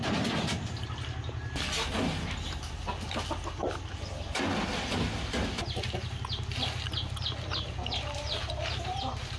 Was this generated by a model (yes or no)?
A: no